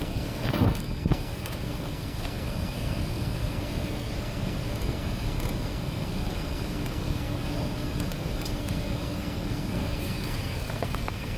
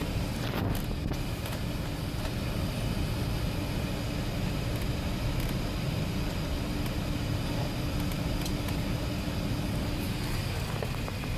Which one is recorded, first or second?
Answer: second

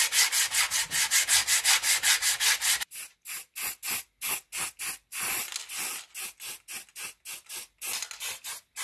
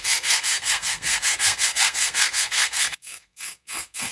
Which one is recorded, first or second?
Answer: first